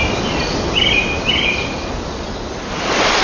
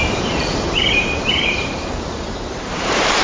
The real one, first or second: first